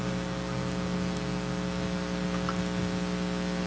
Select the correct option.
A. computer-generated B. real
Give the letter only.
B